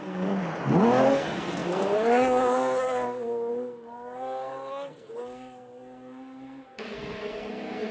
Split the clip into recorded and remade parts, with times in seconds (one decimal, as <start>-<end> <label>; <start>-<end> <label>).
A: 0.0-0.4 remade; 0.4-1.1 recorded; 1.1-7.9 remade